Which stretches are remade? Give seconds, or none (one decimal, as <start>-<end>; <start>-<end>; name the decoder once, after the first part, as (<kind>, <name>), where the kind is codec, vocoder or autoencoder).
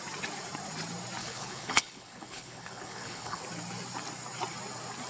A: 1.2-3.4 (codec, HILCodec)